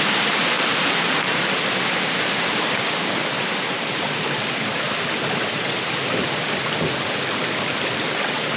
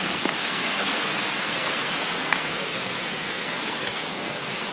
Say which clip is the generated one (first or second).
second